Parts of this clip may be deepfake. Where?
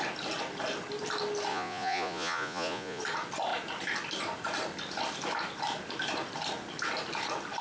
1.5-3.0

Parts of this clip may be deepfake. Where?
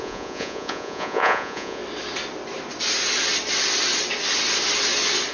0.0-1.8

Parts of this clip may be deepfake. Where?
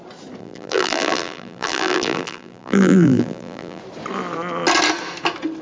0.4-3.8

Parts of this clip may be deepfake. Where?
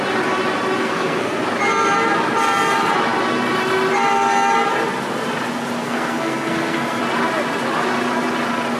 0.8-1.4; 5.8-7.0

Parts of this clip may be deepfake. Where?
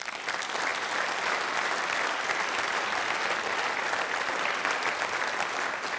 none